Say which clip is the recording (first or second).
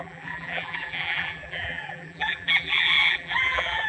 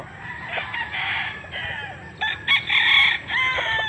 second